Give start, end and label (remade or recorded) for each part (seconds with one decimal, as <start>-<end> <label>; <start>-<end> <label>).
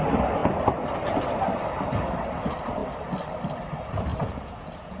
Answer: 0.0-4.1 recorded; 4.1-5.0 remade